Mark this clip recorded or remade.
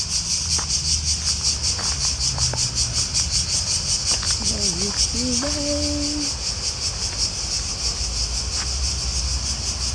recorded